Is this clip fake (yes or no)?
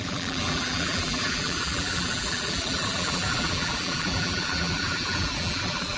yes